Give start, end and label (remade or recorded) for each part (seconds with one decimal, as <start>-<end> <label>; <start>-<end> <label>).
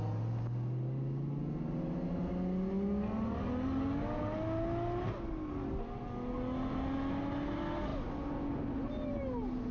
0.0-9.7 recorded